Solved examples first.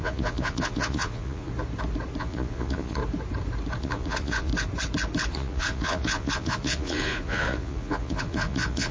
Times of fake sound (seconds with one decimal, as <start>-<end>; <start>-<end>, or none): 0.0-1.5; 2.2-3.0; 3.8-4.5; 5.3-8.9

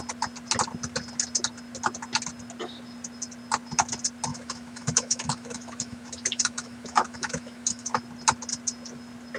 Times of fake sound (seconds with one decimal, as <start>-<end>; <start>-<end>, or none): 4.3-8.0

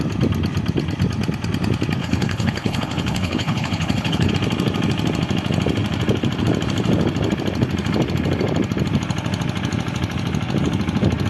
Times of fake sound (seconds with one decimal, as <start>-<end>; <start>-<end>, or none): 2.0-4.3